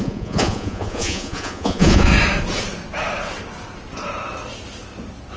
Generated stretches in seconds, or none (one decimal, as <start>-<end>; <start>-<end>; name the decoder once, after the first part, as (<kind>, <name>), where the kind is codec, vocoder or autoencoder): 0.0-2.1 (vocoder, Vocos)